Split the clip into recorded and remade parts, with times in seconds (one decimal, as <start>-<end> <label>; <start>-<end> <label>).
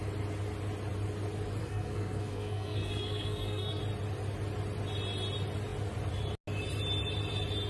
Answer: 0.0-1.6 recorded; 1.6-3.8 remade; 3.8-7.7 recorded